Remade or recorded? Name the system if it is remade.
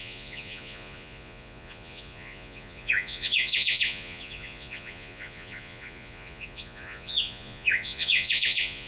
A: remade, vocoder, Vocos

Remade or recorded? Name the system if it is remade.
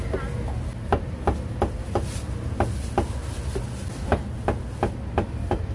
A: recorded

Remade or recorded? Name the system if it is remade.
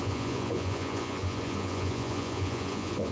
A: remade, vocoder, Vocos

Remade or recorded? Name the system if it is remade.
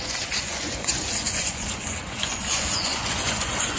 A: remade, vocoder, Vocos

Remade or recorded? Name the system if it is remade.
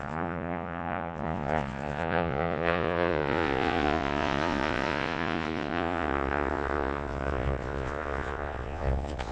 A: remade, vocoder, Vocos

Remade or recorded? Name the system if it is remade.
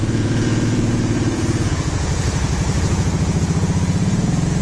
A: remade, vocoder, Vocos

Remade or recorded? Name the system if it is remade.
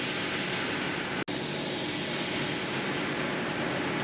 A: recorded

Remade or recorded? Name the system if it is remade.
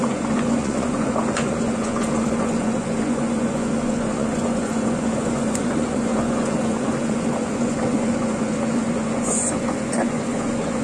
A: remade, vocoder, Vocos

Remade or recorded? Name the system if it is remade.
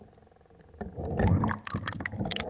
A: recorded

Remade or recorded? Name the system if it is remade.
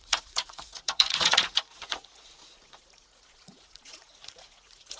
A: remade, vocoder, Vocos